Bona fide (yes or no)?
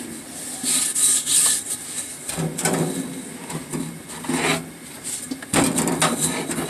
yes